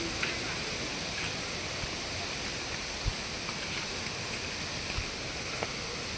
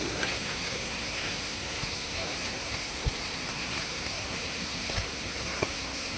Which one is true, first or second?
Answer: first